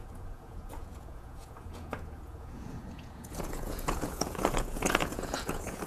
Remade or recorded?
remade